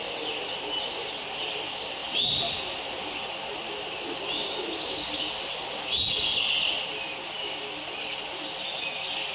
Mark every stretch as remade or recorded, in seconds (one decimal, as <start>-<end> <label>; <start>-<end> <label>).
0.0-9.3 recorded